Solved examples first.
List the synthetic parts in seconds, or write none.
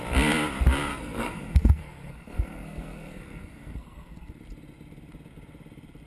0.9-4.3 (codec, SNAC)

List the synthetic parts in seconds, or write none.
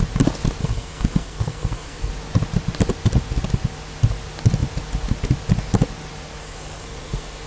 0.6-2.1 (codec, SNAC); 6.4-7.5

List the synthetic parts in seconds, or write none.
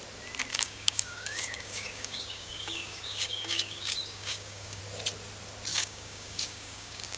0.5-4.8 (codec, DAC); 5.7-7.2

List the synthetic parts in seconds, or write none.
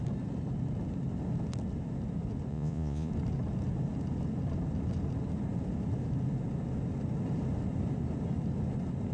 2.5-3.1 (vocoder, Vocos)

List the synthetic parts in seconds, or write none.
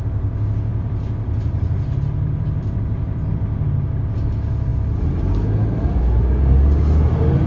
0.7-3.4 (vocoder, BigVGAN v2)